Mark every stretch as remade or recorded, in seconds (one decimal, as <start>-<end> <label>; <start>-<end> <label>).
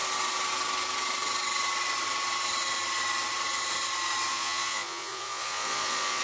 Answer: 0.0-4.3 recorded; 4.3-6.2 remade